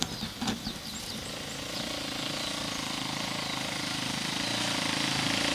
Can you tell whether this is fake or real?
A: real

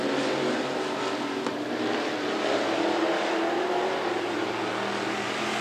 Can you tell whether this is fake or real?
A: real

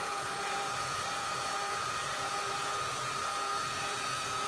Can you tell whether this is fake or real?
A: fake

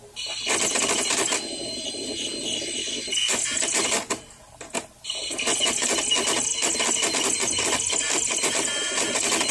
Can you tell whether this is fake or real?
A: real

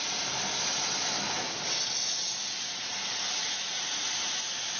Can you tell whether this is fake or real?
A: real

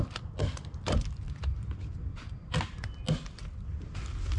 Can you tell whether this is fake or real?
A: real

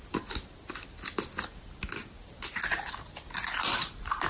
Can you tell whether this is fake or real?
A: real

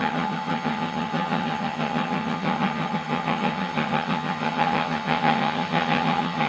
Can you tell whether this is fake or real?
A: fake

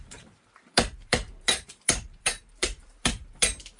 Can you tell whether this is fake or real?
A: fake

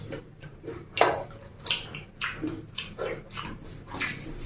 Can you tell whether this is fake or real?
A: fake